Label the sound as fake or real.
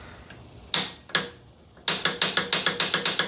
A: real